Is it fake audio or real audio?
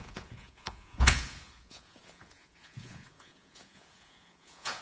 fake